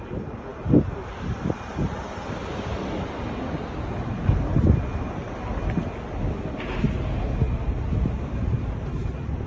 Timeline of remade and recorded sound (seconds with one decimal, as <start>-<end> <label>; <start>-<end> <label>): 0.0-9.5 recorded